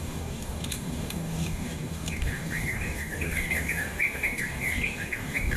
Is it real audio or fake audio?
fake